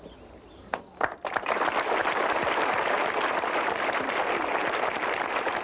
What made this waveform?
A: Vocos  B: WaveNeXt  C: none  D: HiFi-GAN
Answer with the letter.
C